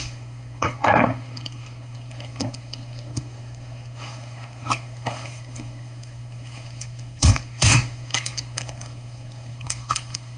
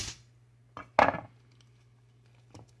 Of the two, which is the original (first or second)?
second